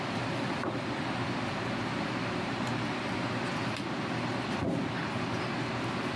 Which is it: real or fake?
real